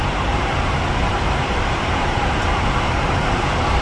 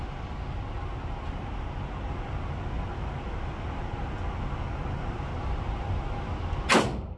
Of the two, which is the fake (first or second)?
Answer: first